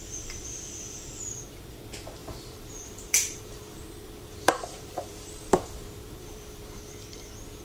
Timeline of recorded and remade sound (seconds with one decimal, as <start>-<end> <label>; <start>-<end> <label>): 0.0-2.2 recorded; 2.2-6.8 remade; 6.8-7.6 recorded